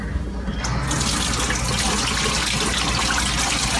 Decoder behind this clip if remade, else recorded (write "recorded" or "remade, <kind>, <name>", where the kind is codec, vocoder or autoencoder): recorded